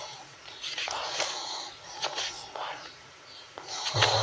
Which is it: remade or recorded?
remade